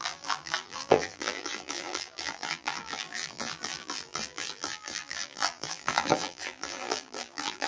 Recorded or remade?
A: remade